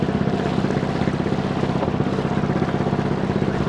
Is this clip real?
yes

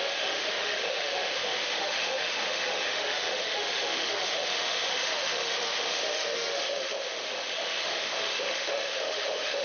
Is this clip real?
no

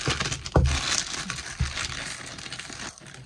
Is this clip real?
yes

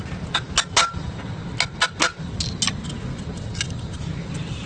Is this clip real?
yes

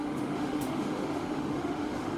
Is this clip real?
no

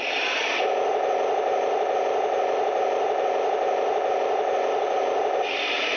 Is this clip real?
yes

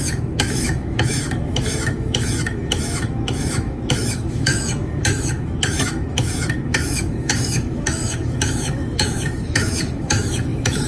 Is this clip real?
no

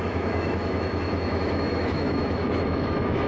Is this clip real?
no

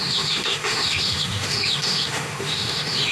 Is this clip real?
no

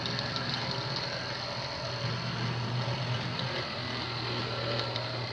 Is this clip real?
yes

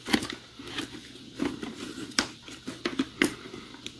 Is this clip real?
yes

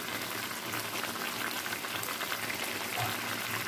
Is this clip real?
yes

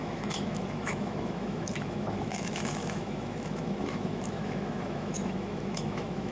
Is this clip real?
no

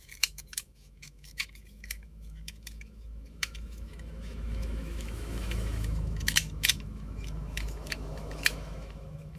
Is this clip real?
no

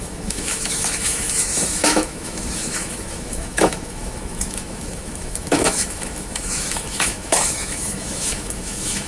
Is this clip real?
no